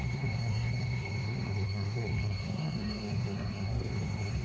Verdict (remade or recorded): remade